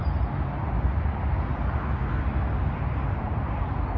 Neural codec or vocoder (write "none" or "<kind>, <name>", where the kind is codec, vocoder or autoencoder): none